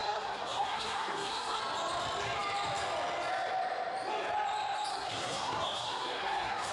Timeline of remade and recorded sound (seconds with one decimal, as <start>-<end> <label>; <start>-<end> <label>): 0.0-1.6 remade; 1.6-4.9 recorded; 4.9-6.7 remade